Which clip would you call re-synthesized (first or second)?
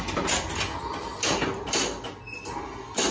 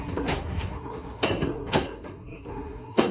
second